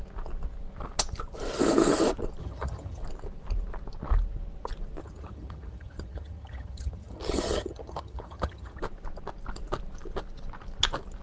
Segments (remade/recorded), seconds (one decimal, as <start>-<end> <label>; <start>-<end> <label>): 0.0-2.4 recorded; 2.4-3.0 remade; 3.0-5.0 recorded; 5.0-8.8 remade; 8.8-11.2 recorded